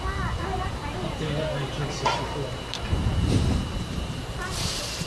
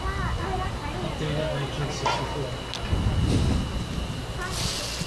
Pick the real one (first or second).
second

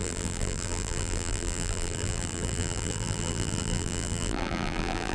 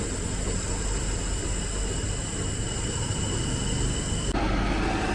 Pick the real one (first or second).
second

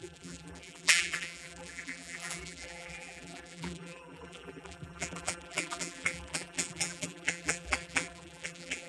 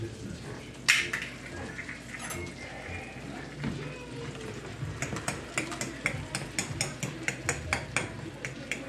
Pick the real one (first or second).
second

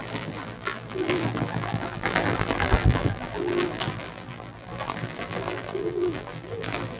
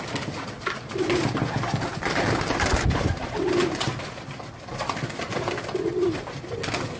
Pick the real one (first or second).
second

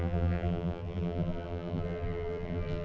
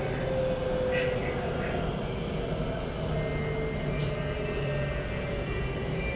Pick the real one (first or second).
second